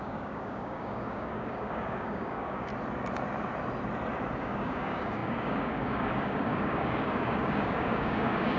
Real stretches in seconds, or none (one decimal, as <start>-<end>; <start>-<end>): 2.7-4.4